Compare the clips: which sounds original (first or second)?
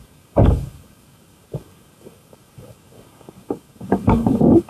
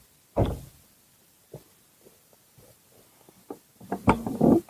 second